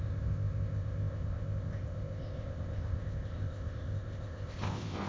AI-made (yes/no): yes